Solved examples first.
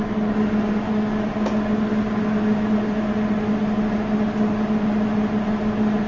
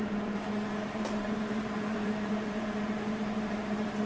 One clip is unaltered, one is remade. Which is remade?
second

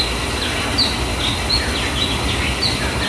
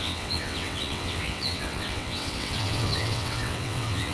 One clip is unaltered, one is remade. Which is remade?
second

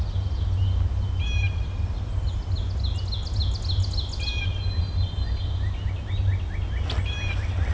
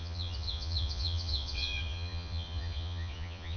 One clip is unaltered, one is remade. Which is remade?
second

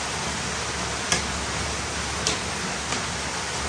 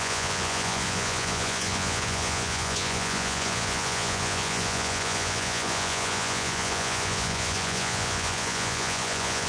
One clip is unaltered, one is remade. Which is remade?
second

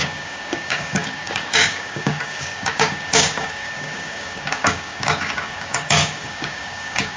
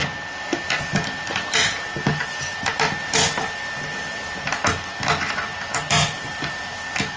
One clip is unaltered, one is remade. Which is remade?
first